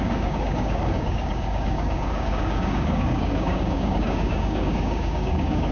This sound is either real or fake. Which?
fake